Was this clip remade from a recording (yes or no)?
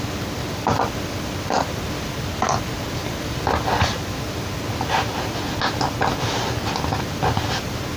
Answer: no